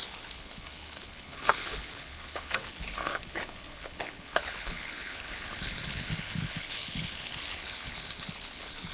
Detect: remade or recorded remade